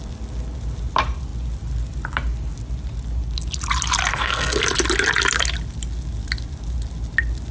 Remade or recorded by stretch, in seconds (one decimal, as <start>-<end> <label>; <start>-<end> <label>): 0.0-4.1 recorded; 4.1-4.6 remade; 4.6-7.5 recorded